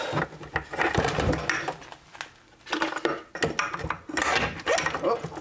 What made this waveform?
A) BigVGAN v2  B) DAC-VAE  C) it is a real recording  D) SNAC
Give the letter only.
C